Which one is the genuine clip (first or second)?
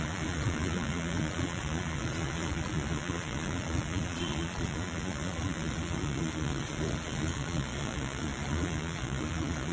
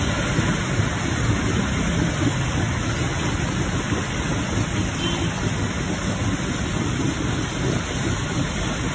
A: second